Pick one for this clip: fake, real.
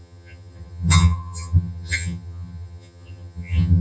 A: fake